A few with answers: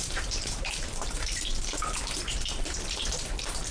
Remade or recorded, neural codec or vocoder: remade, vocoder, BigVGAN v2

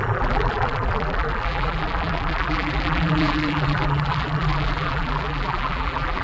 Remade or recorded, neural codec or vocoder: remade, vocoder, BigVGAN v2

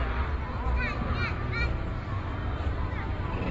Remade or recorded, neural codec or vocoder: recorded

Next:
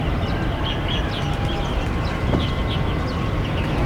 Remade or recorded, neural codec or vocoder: recorded